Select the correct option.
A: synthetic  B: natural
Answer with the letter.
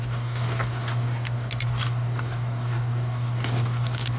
A